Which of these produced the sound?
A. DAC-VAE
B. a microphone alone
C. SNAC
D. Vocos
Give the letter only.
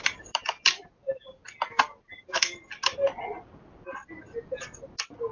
B